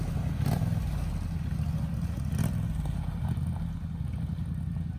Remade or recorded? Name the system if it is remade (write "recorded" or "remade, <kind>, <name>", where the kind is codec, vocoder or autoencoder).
recorded